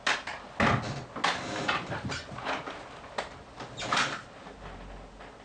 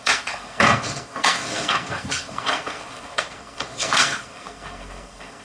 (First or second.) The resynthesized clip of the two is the second